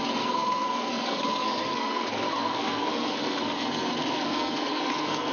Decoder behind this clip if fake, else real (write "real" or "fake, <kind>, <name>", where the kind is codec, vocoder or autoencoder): fake, codec, SNAC